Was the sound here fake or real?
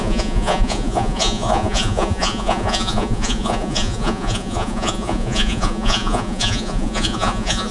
fake